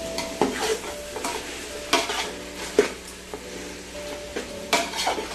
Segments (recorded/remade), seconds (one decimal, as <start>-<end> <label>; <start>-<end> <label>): 0.0-4.3 recorded; 4.3-5.3 remade